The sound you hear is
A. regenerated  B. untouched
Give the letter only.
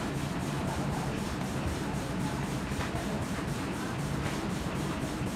A